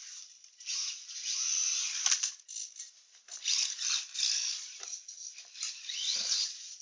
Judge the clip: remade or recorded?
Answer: recorded